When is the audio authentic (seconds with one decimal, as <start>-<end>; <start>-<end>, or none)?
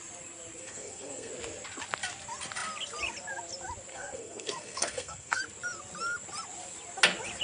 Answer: 0.0-0.6; 1.3-3.9; 5.4-7.4